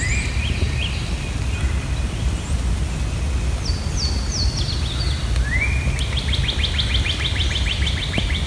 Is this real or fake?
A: real